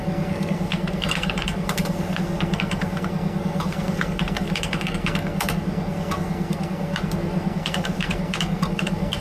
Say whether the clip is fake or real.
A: fake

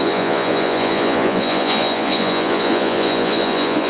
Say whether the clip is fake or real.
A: fake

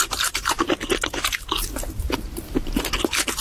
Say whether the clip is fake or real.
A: fake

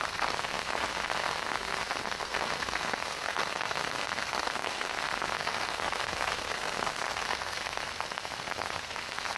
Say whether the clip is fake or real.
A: fake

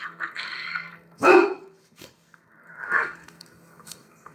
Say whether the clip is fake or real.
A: fake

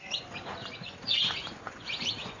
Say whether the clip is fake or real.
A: fake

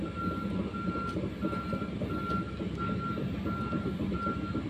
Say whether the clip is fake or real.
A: real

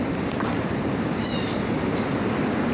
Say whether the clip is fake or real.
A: real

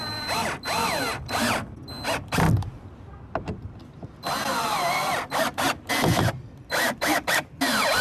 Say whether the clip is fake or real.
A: real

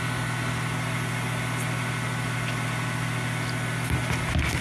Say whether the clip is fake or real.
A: real